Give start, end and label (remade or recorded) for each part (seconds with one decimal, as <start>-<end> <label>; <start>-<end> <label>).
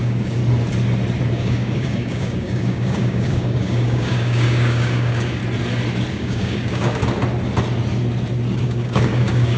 0.0-0.4 remade; 0.4-1.3 recorded; 1.3-5.4 remade; 5.4-6.1 recorded; 6.1-7.0 remade; 7.0-8.6 recorded; 8.6-9.6 remade